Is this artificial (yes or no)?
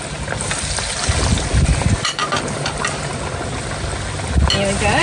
no